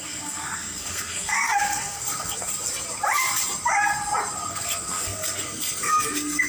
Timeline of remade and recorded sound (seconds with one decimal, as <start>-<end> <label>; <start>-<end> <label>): 0.0-2.5 remade; 2.5-4.5 recorded; 4.5-6.5 remade